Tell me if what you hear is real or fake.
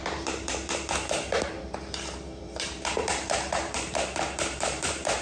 fake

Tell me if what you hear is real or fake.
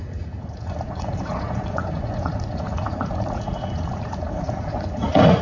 fake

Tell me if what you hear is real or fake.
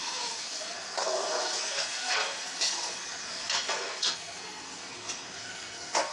fake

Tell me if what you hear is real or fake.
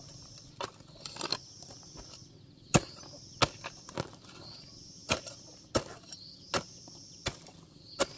real